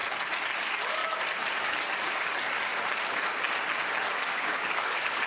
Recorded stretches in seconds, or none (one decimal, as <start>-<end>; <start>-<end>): 0.0-0.6; 1.0-1.6; 2.7-4.0